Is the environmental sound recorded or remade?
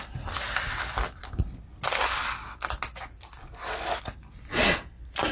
recorded